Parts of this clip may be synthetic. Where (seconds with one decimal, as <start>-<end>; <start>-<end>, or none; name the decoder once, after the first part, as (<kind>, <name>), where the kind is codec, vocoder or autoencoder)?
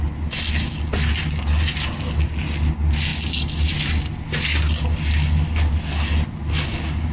none